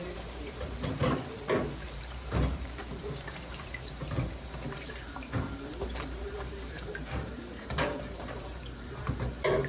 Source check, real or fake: fake